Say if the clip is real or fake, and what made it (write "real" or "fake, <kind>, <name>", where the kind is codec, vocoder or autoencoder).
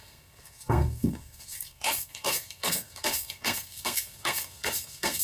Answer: fake, codec, SNAC